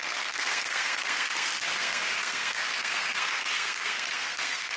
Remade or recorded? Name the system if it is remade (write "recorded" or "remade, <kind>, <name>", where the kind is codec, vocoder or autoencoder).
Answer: remade, codec, SNAC